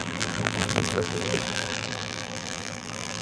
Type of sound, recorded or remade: remade